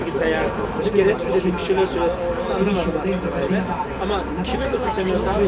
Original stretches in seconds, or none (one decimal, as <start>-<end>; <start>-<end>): 0.0-4.5; 5.1-5.5